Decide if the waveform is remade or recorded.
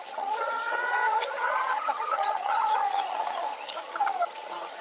remade